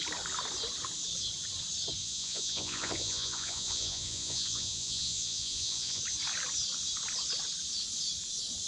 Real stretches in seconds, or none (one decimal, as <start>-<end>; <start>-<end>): 0.0-2.0; 6.0-8.7